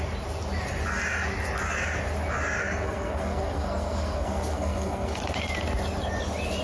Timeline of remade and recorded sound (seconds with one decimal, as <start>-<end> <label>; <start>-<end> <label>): 0.0-2.6 recorded; 2.6-5.2 remade; 5.2-6.6 recorded